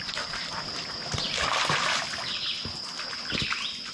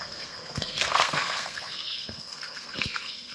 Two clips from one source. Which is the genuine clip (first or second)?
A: first